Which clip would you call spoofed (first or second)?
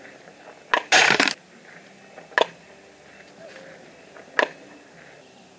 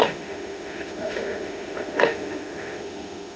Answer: second